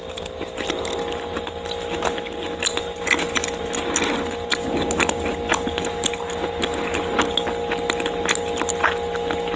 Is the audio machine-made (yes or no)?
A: no